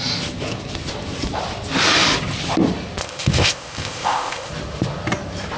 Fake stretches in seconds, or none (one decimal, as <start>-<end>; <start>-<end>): 3.0-4.5